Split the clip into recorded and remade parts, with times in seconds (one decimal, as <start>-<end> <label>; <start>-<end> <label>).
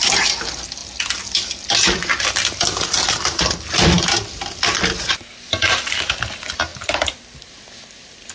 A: 0.0-8.3 recorded